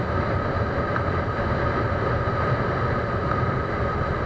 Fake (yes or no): no